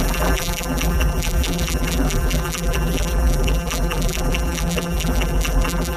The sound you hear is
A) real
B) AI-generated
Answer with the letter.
B